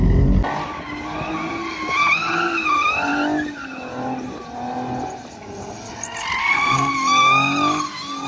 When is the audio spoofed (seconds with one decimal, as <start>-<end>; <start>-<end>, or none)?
6.4-6.9